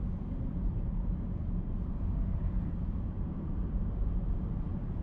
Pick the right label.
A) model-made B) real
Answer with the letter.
A